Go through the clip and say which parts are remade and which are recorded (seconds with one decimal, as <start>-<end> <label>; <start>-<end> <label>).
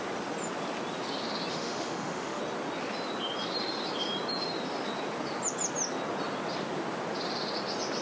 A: 0.0-1.5 recorded; 1.5-2.4 remade; 2.4-8.0 recorded